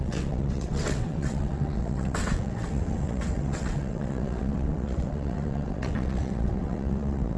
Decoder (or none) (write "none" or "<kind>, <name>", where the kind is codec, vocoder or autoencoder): vocoder, WaveNeXt